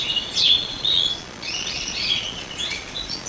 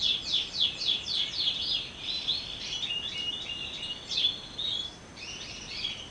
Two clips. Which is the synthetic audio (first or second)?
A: first